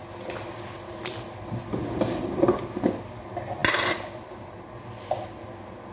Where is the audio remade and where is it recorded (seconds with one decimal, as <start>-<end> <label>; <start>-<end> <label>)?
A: 0.0-5.9 recorded